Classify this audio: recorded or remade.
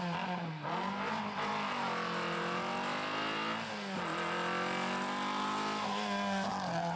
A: recorded